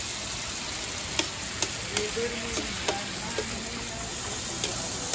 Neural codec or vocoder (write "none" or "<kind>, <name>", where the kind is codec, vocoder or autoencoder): none